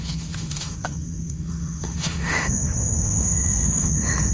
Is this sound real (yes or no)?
no